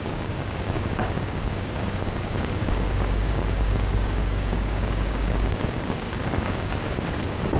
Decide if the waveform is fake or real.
fake